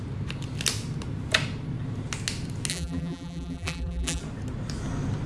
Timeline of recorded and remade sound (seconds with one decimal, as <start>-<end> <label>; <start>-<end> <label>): 0.0-2.7 recorded; 2.7-4.2 remade; 4.2-5.3 recorded